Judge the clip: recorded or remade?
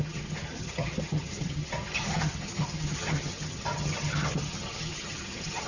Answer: remade